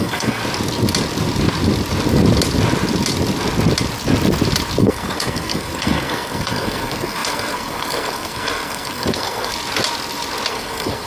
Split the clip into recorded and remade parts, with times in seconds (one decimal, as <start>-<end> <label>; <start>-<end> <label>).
0.0-0.4 remade; 0.4-4.8 recorded; 4.8-9.5 remade; 9.5-10.5 recorded; 10.5-11.1 remade